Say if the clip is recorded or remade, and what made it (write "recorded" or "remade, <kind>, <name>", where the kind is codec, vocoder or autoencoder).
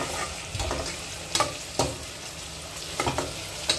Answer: recorded